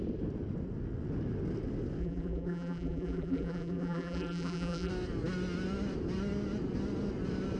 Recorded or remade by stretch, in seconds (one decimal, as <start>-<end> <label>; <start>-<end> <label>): 0.0-2.0 recorded; 2.0-4.9 remade; 4.9-7.6 recorded